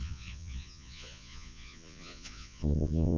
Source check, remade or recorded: remade